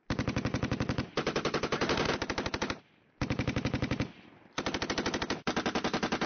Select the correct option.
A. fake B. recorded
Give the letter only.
B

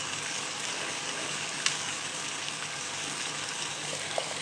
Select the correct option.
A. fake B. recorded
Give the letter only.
A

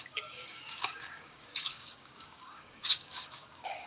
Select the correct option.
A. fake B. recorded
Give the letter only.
A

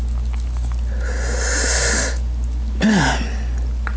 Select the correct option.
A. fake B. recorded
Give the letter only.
B